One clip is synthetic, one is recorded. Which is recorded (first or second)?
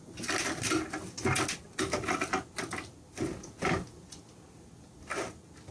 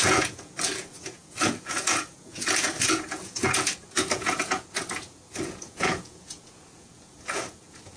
first